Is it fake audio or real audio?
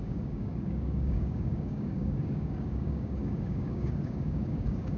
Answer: fake